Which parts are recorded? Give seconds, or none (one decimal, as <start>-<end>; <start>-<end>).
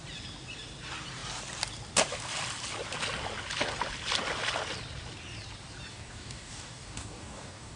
0.0-5.9